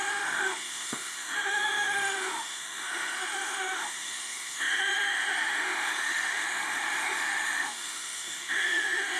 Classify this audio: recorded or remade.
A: remade